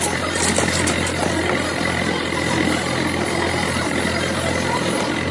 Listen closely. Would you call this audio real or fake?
real